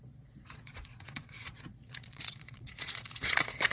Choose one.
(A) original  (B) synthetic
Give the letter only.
B